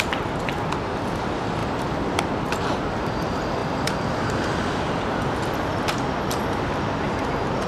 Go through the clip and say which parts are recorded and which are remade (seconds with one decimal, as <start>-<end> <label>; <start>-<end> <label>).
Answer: 0.0-1.6 recorded; 1.6-2.2 remade; 2.2-3.6 recorded; 3.6-6.5 remade; 6.5-7.7 recorded